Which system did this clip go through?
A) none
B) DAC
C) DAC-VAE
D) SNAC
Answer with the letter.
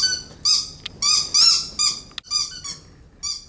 A